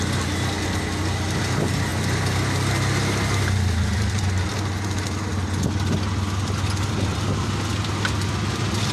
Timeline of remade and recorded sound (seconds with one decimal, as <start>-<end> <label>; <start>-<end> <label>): 0.0-8.9 recorded